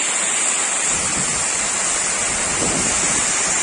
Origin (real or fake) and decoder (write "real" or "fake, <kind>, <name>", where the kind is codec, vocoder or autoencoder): real